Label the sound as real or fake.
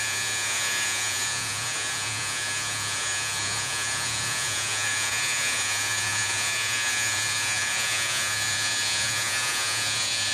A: fake